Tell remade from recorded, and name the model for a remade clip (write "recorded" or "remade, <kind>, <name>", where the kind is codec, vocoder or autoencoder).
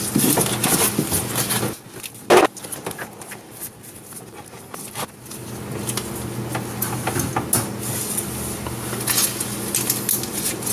recorded